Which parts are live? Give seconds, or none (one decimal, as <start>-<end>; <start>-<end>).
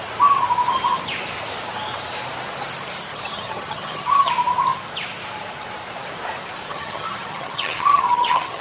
0.0-3.1; 4.3-6.7